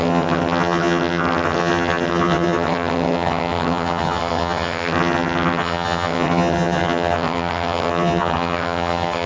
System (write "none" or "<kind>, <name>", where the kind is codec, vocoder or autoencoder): vocoder, HiFi-GAN